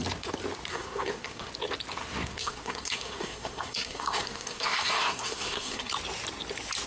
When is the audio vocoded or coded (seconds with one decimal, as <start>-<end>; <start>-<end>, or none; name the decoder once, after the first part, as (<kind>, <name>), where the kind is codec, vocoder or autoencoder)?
0.7-1.5 (codec, SNAC); 2.0-5.9